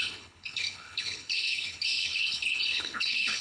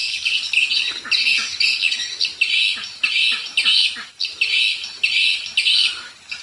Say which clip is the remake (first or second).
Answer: first